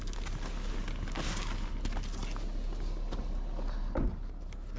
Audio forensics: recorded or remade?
recorded